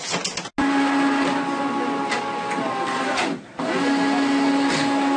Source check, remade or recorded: recorded